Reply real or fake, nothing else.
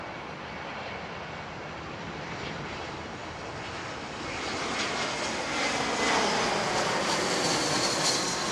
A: real